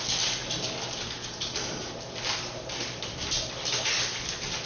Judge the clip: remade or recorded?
recorded